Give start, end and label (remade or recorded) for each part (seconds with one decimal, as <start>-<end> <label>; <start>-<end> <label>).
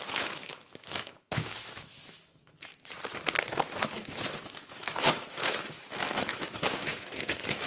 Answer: 0.0-2.7 remade; 2.7-3.5 recorded; 3.5-7.7 remade